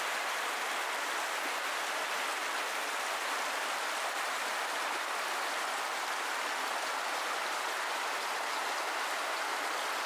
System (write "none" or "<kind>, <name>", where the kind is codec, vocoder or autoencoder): none